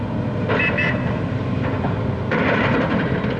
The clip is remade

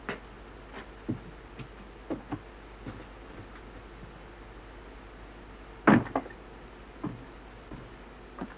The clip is recorded